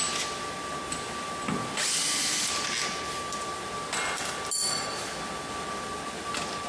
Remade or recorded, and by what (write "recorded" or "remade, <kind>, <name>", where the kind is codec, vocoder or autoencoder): recorded